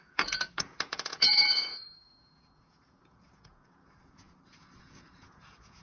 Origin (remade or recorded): remade